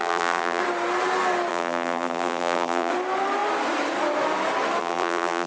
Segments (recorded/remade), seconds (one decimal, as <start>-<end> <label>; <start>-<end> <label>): 0.0-0.6 remade; 0.6-1.5 recorded; 1.5-2.9 remade; 2.9-4.8 recorded; 4.8-5.5 remade